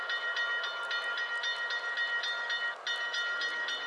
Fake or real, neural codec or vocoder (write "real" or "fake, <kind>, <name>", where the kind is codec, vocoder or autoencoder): real